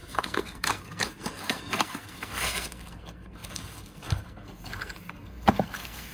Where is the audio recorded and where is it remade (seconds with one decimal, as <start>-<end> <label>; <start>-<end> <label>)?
0.0-6.1 remade